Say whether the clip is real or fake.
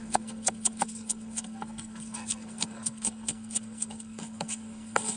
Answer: fake